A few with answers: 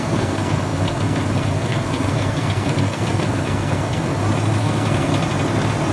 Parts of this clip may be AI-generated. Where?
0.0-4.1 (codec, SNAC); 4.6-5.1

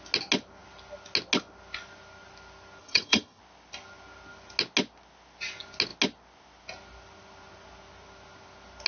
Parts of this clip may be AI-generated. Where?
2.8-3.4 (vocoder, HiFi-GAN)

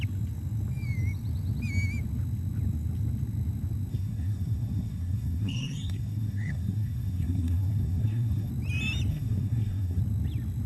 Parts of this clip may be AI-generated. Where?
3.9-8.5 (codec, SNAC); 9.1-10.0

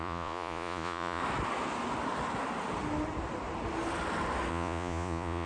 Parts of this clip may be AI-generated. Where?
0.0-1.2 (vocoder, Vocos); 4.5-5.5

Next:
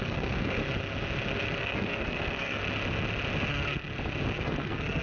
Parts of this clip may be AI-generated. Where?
0.0-0.6 (codec, SNAC); 1.6-2.6; 3.5-3.9; 4.4-5.0

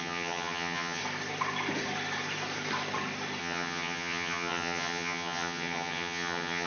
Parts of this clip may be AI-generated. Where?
0.0-1.0 (vocoder, HiFi-GAN); 3.4-6.7